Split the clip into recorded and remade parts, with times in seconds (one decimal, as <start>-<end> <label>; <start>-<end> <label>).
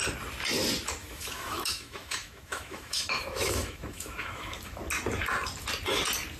0.0-1.0 recorded; 1.0-4.8 remade; 4.8-6.4 recorded